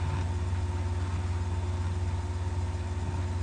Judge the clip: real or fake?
real